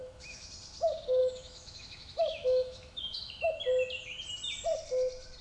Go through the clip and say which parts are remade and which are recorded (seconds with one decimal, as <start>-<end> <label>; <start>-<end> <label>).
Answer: 0.0-0.5 remade; 0.5-1.2 recorded; 1.2-3.5 remade; 3.5-5.4 recorded